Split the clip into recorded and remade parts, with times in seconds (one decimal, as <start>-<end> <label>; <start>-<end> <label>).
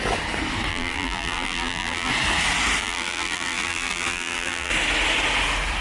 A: 0.0-0.7 recorded; 0.7-2.1 remade; 2.1-2.8 recorded; 2.8-4.7 remade; 4.7-5.8 recorded